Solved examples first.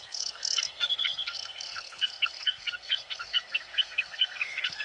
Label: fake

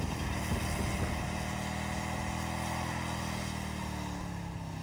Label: real